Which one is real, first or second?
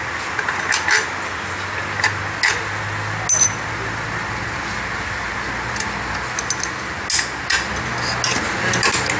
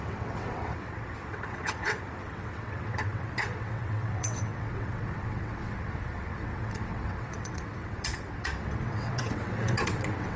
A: first